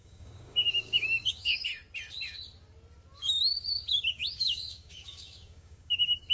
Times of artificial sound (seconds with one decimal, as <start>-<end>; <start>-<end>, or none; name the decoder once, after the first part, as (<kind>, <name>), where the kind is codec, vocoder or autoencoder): 0.0-1.7 (codec, DAC); 3.2-6.3